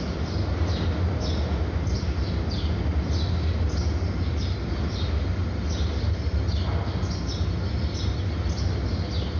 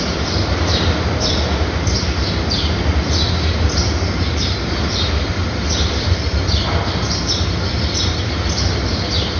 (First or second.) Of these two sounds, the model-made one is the second